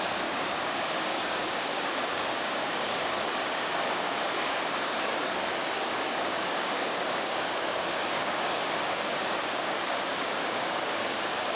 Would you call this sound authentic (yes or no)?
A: no